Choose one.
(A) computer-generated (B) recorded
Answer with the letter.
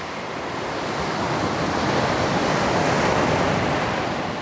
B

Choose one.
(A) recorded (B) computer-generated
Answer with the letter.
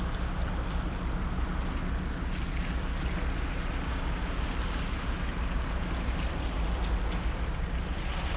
A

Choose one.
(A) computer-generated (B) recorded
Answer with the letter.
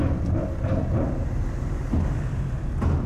B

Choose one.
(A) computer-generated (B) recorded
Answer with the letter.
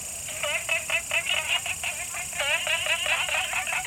B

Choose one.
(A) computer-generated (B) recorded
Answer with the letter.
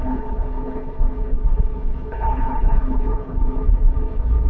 A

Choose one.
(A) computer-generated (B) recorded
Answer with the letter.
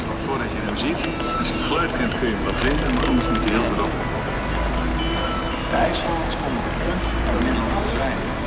B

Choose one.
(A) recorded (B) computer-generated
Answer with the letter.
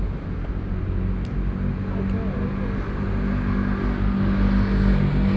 A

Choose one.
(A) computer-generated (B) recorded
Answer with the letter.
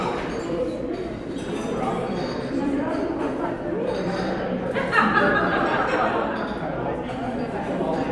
A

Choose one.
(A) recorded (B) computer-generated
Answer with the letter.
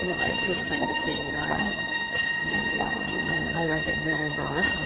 B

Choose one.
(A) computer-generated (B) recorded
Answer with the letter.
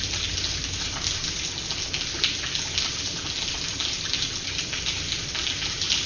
B